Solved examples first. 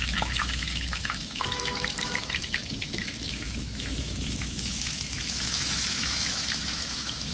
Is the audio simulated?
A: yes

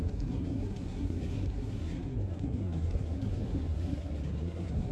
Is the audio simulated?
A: yes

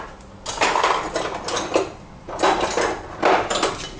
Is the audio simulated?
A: no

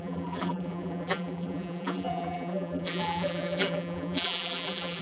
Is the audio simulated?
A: yes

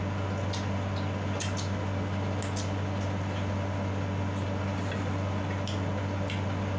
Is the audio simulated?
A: no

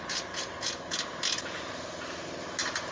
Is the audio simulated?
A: no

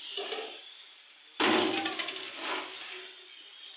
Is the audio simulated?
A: no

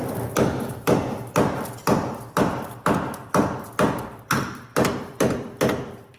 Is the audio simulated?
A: yes